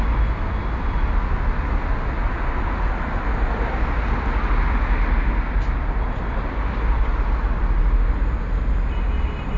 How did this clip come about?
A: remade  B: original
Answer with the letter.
B